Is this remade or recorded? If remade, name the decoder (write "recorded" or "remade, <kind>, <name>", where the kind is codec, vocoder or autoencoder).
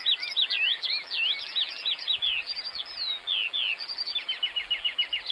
remade, vocoder, BigVGAN v2